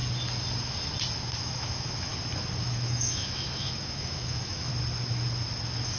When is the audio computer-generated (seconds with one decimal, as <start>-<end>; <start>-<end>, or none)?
1.4-2.1; 2.6-4.7